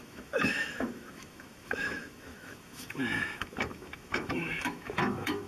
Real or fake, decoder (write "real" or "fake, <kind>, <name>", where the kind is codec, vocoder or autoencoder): fake, autoencoder, DAC-VAE